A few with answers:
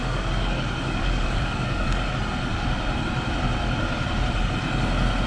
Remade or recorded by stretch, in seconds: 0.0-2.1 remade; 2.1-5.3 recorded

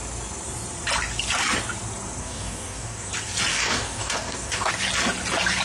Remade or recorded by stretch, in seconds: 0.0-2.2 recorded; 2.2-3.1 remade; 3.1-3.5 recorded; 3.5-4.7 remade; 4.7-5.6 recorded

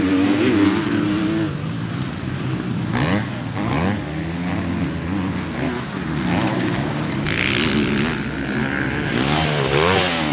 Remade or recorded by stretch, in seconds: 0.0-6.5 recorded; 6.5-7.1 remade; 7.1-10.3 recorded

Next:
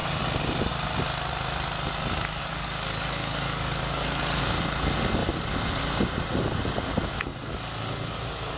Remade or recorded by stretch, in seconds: 0.0-2.4 recorded; 2.4-4.4 remade; 4.4-8.6 recorded